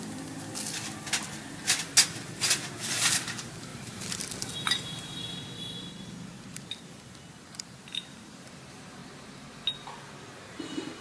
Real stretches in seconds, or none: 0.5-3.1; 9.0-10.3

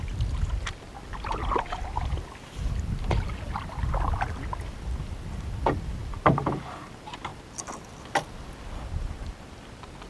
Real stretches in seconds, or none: 0.0-10.1

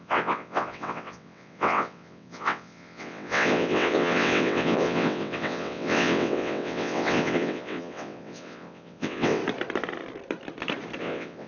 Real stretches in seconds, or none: 9.4-11.0

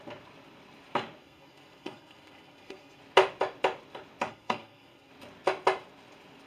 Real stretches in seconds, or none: 0.0-1.2; 3.0-4.3; 5.1-6.5

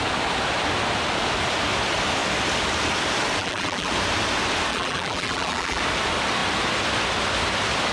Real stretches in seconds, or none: 0.0-3.4; 3.9-4.7; 5.8-7.9

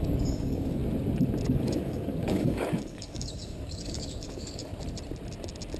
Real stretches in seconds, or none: 0.8-1.5; 4.7-5.8